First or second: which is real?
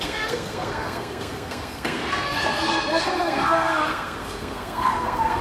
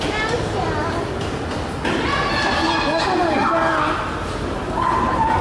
second